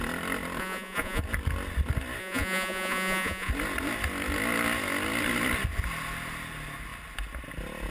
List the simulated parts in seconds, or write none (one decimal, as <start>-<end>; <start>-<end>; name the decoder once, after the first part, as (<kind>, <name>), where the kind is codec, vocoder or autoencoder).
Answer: 0.6-1.2 (vocoder, Vocos); 2.2-3.5